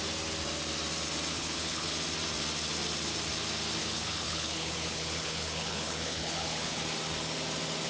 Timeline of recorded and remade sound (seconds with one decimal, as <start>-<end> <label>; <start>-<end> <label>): 0.0-1.3 recorded; 1.3-1.9 remade; 1.9-3.8 recorded; 3.8-6.8 remade; 6.8-7.9 recorded